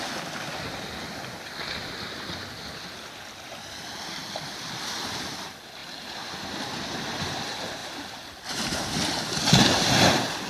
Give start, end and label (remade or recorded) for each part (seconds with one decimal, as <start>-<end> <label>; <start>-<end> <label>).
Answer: 0.0-10.5 recorded